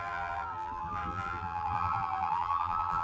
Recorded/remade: remade